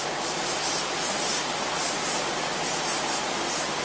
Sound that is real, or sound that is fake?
real